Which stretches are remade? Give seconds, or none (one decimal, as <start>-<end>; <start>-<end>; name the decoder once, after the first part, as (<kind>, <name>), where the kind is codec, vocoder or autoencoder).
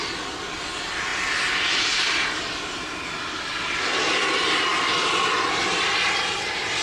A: none